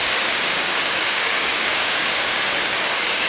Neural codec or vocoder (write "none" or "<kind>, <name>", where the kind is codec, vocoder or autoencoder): codec, DAC